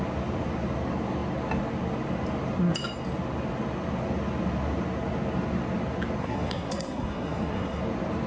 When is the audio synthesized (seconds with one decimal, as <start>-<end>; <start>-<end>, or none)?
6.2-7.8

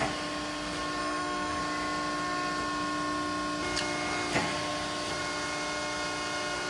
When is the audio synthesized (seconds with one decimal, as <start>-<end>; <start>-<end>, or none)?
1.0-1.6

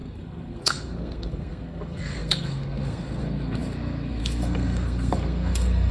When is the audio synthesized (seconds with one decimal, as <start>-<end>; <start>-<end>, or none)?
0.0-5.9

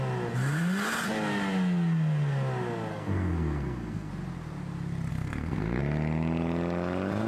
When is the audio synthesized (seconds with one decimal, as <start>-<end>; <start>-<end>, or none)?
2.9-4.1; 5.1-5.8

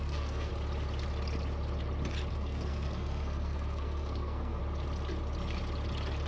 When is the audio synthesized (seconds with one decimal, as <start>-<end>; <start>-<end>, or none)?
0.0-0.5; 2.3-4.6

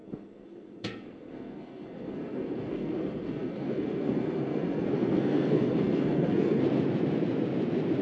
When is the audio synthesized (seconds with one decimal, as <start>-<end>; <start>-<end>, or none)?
0.0-6.6